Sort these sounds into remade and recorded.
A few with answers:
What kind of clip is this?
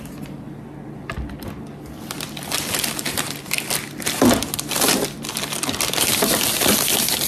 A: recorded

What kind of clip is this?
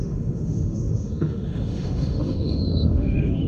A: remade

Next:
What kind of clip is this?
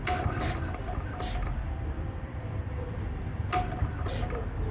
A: remade